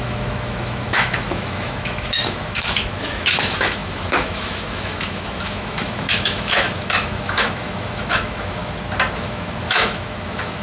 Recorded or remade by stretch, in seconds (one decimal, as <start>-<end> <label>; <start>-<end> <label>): 0.0-8.6 remade; 8.6-9.2 recorded; 9.2-10.6 remade